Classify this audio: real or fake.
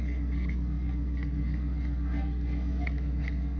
fake